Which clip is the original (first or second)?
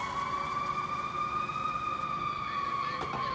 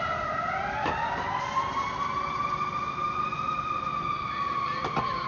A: first